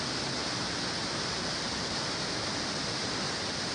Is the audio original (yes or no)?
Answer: yes